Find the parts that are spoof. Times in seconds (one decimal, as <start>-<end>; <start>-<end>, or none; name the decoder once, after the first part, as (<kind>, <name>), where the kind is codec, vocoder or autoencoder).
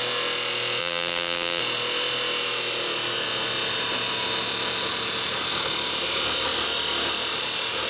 0.8-1.6 (vocoder, BigVGAN v2)